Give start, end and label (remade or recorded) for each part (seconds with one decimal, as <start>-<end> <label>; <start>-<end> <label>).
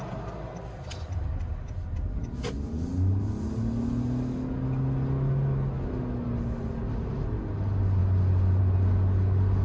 0.0-9.6 recorded